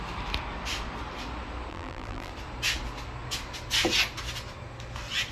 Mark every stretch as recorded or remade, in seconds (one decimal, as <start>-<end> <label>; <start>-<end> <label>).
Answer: 0.0-1.7 recorded; 1.7-2.3 remade; 2.3-5.3 recorded